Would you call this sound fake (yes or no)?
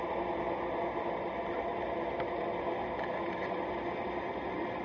no